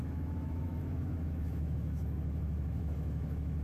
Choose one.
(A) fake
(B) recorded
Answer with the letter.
A